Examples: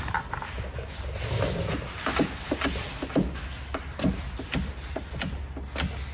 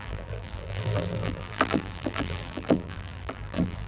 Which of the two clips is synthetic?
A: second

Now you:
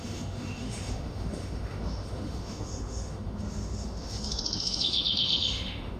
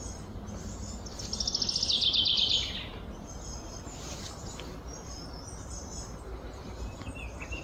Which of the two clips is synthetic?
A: first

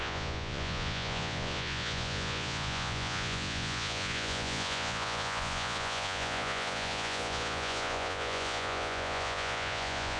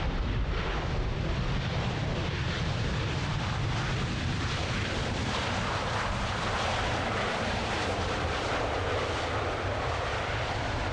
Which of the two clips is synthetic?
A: first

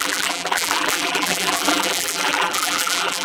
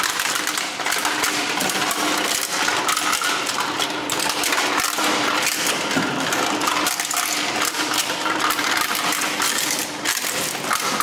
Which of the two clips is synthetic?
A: first